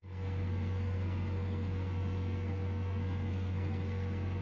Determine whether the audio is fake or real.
fake